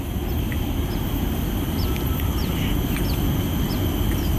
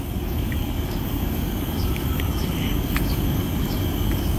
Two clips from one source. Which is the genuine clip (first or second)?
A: first